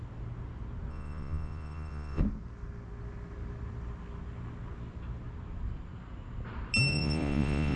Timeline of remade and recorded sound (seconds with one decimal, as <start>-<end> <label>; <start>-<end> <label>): 0.0-0.9 recorded; 0.9-2.2 remade; 2.2-6.9 recorded; 6.9-7.8 remade